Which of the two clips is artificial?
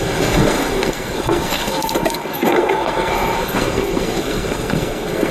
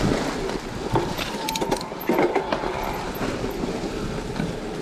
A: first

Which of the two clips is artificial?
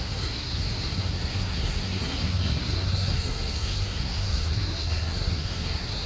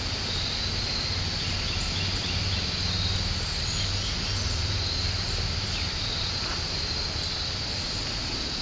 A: first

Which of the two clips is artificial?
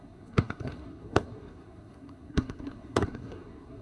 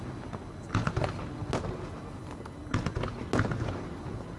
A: first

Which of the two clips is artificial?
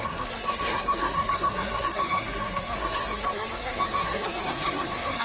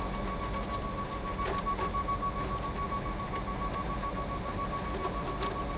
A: first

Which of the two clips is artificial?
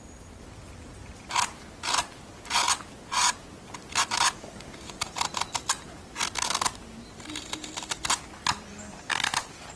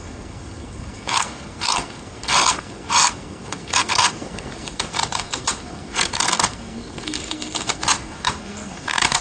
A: second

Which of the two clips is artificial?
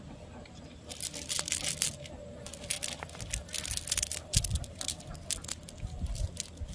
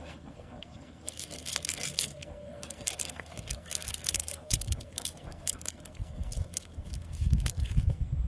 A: second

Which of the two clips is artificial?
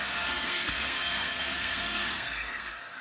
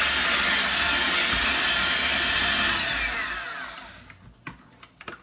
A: first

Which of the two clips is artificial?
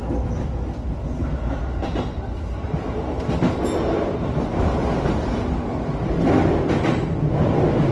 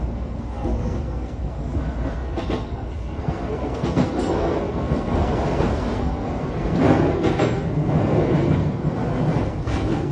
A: second